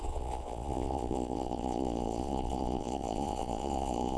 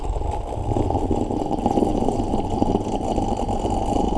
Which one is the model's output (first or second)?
first